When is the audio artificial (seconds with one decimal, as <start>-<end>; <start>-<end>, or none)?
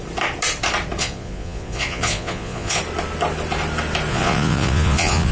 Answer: 1.0-2.8; 4.1-5.3